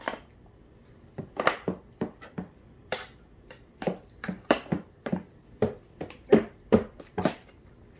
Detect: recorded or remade remade